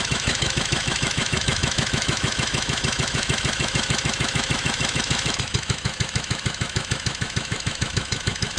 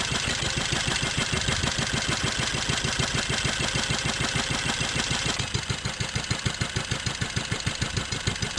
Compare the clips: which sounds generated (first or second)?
first